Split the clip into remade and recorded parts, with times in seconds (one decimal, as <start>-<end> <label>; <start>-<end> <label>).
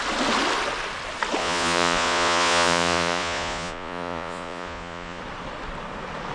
0.0-1.4 recorded; 1.4-5.2 remade; 5.2-6.3 recorded